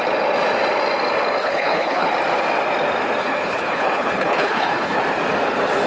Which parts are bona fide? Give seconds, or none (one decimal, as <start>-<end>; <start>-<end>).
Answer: 0.0-1.4; 2.1-3.2; 5.0-5.9